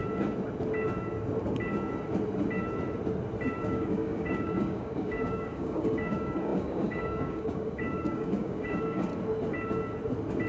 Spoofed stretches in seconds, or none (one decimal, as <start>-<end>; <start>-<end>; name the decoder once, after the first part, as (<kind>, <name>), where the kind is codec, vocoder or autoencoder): 3.6-9.1 (codec, DAC)